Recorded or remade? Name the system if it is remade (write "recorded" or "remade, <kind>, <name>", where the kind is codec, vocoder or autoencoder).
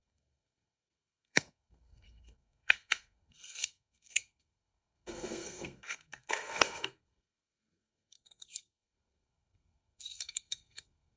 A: remade, codec, SNAC